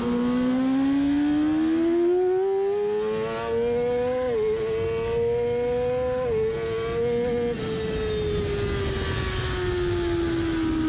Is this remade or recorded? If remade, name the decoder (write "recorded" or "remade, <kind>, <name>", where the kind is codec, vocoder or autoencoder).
recorded